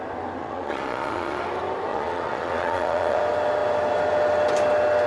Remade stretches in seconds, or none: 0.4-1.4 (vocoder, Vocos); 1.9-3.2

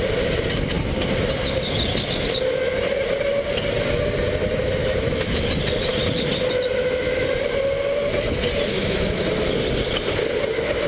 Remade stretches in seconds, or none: 4.8-5.4 (autoencoder, DAC-VAE); 8.7-9.2

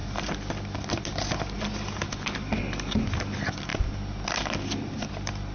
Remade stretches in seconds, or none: none

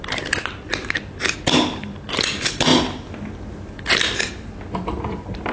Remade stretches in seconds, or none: none

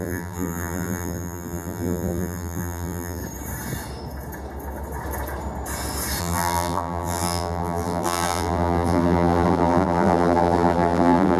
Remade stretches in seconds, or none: 0.0-3.2 (vocoder, BigVGAN v2); 6.2-11.4

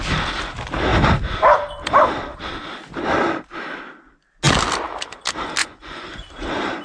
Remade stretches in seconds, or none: 5.6-6.3 (vocoder, Vocos)